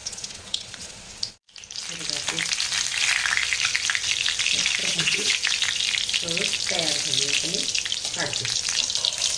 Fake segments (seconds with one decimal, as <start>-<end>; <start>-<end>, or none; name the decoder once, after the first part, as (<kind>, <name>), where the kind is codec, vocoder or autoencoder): 0.0-1.1 (vocoder, Vocos); 4.8-5.3